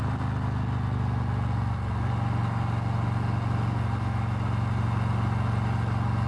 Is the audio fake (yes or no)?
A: no